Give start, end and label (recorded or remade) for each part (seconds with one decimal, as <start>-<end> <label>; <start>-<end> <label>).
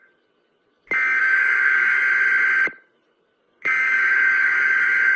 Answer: 0.0-1.2 recorded; 1.2-2.0 remade; 2.0-3.4 recorded; 3.4-5.2 remade